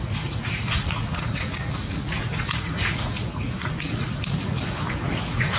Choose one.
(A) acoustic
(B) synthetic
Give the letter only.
B